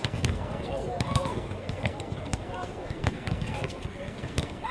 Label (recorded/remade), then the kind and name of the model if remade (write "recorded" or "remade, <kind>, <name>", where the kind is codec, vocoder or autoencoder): remade, codec, SNAC